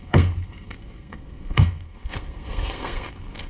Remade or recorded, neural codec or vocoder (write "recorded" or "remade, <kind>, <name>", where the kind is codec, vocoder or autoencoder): remade, codec, SNAC